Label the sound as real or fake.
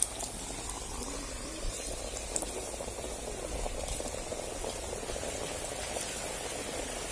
real